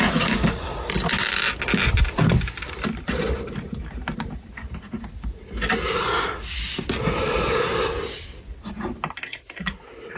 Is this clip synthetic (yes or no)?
no